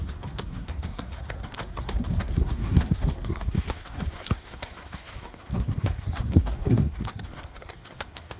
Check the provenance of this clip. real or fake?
fake